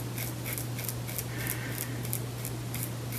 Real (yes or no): yes